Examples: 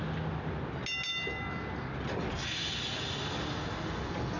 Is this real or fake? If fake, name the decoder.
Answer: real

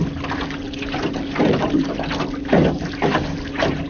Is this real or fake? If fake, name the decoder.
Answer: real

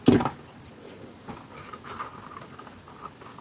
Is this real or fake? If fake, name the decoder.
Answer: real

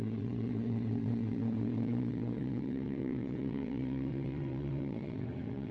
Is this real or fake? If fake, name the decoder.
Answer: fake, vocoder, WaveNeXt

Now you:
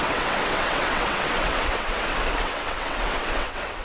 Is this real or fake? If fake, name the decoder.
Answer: fake, vocoder, WaveNeXt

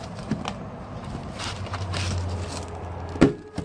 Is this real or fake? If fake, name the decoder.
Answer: real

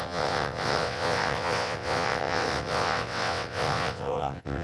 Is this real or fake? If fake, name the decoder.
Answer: fake, vocoder, WaveNeXt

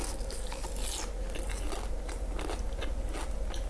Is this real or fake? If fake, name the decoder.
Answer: real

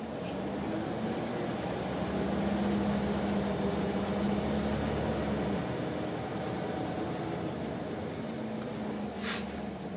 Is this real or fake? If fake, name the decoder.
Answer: real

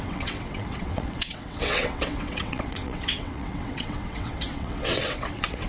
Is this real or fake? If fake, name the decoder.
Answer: fake, vocoder, WaveNeXt